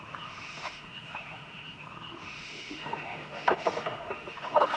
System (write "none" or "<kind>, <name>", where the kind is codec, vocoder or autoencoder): autoencoder, DAC-VAE